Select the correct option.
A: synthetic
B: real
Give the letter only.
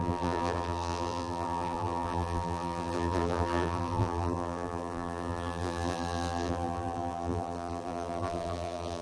A